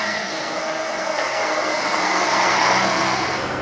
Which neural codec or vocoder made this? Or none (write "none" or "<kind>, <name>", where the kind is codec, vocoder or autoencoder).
codec, SNAC